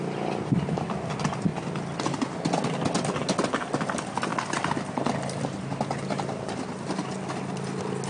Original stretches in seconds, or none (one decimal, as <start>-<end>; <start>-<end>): 0.0-8.1

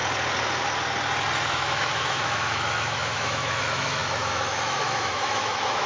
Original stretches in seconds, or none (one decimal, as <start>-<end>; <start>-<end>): 0.0-1.5

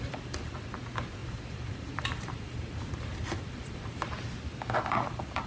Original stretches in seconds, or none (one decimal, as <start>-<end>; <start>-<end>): 0.0-1.2; 4.2-5.5

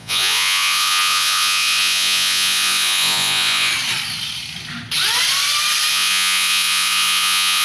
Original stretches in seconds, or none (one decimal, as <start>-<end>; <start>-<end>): 3.7-5.9